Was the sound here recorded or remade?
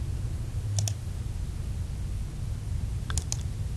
recorded